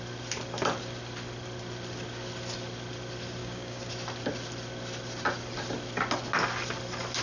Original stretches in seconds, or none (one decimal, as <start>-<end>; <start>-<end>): 0.0-3.4; 3.9-7.2